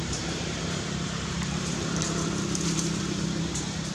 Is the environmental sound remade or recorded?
remade